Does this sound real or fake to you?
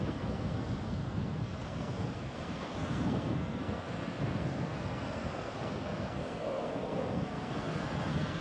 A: fake